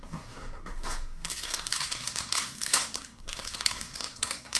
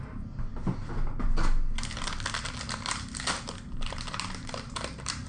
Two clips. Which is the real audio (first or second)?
second